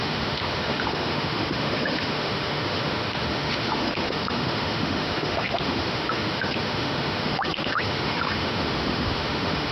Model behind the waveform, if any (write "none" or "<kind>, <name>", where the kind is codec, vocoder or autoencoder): autoencoder, DAC-VAE